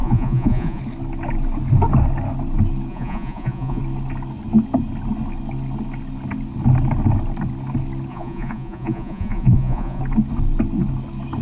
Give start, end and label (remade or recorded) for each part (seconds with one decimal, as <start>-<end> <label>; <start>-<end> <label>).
0.0-0.8 remade; 0.8-2.9 recorded; 2.9-3.8 remade; 3.8-8.1 recorded; 8.1-10.0 remade; 10.0-11.4 recorded